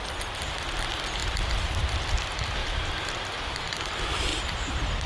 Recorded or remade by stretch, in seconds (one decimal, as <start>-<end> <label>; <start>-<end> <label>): 0.0-1.2 recorded; 1.2-1.8 remade; 1.8-2.6 recorded; 2.6-3.9 remade; 3.9-5.1 recorded